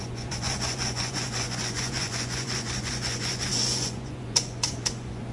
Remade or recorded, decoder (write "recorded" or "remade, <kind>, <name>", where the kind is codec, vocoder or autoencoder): remade, vocoder, Vocos